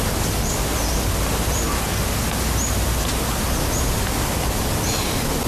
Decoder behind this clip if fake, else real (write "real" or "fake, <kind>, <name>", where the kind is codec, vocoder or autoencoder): real